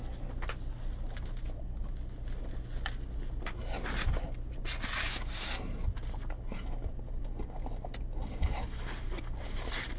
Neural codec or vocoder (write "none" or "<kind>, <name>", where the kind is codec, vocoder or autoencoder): none